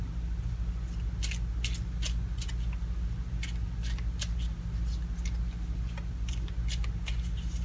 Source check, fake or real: real